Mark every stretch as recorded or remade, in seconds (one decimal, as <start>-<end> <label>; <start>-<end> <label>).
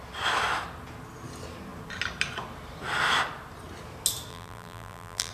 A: 0.0-4.3 recorded; 4.3-5.3 remade